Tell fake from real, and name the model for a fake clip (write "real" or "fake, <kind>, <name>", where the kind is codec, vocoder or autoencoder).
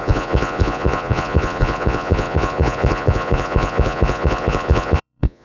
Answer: fake, vocoder, Vocos